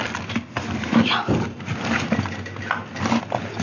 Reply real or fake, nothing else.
real